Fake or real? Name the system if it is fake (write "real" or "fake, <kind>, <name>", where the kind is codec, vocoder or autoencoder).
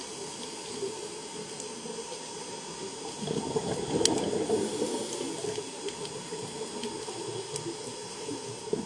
real